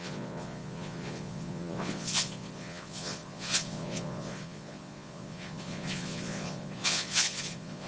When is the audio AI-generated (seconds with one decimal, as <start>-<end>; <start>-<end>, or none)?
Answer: 0.0-7.9